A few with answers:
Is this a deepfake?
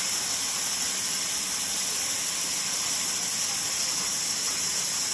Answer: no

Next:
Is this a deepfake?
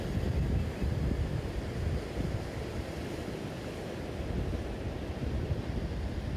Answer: no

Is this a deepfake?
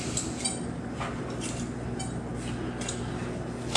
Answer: no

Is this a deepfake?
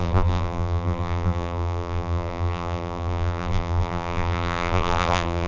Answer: yes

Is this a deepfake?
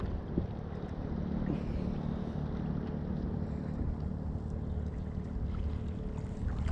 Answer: no